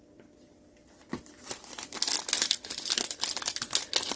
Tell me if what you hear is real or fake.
real